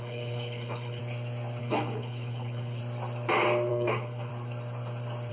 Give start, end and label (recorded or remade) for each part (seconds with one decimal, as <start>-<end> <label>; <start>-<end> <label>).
0.0-1.0 remade; 1.0-1.6 recorded; 1.6-2.8 remade; 2.8-3.7 recorded; 3.7-4.3 remade; 4.3-5.3 recorded